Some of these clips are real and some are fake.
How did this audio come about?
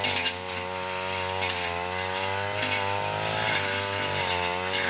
real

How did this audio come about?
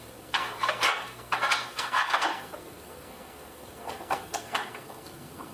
fake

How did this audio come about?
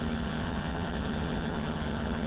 fake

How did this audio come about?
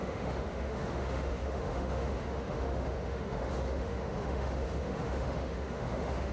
fake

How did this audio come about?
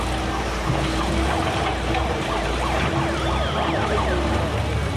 real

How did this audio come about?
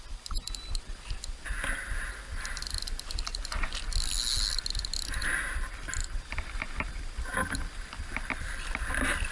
real